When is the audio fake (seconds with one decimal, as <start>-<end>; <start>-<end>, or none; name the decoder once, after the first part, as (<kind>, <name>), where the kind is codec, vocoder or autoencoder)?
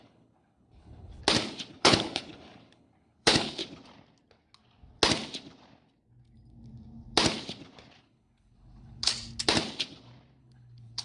0.0-1.2 (codec, HILCodec); 1.7-3.6; 8.0-9.1; 10.4-11.0